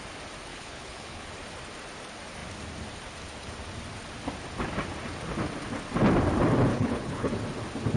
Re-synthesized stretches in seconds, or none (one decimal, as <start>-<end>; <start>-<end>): 0.5-1.3; 6.7-7.3